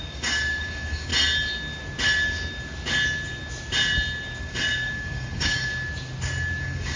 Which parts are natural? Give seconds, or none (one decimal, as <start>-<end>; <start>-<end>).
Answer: 1.1-4.4; 5.7-6.6